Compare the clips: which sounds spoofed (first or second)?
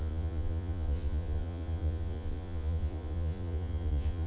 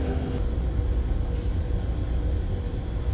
first